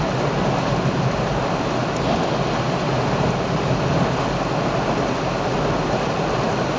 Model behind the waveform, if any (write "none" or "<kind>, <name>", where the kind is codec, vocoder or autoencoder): none